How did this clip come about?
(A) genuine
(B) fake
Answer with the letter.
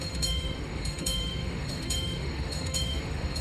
B